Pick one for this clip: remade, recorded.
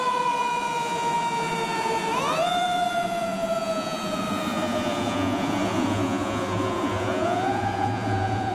remade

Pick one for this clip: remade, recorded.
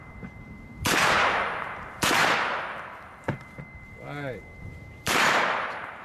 remade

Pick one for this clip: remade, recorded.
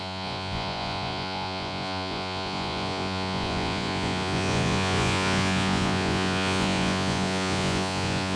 remade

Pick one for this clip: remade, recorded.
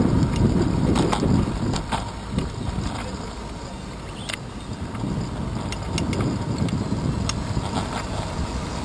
recorded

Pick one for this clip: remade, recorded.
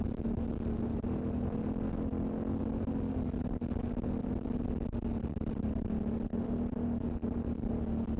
recorded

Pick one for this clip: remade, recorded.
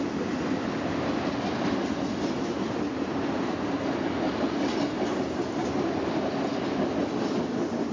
recorded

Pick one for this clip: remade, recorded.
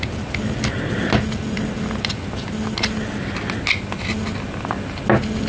recorded